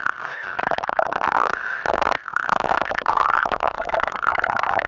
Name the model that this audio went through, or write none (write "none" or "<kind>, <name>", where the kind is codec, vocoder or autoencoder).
codec, SNAC